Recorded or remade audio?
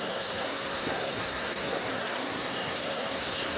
remade